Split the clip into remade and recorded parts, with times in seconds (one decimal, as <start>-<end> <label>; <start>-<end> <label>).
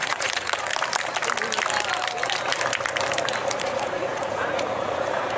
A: 0.0-0.7 remade; 0.7-3.4 recorded; 3.4-5.4 remade